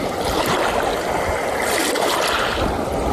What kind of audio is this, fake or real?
real